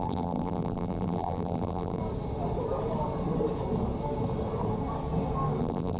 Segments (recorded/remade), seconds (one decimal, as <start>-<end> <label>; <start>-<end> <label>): 0.0-2.0 remade; 2.0-5.6 recorded; 5.6-6.0 remade